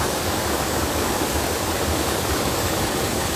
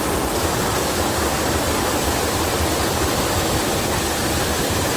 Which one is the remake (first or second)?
first